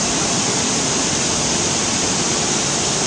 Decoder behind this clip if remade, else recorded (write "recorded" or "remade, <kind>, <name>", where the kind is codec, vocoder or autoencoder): recorded